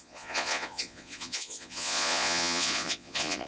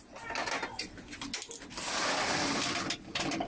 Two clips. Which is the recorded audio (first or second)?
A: second